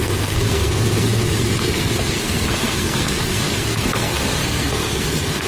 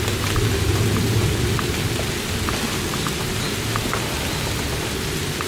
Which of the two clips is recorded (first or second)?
second